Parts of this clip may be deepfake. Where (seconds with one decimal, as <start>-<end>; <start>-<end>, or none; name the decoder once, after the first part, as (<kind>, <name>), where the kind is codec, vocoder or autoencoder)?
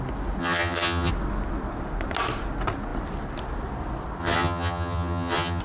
0.4-1.1 (vocoder, HiFi-GAN); 4.2-5.6